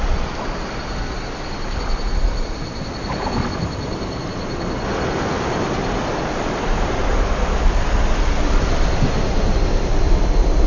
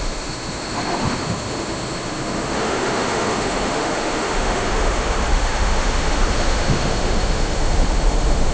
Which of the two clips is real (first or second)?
first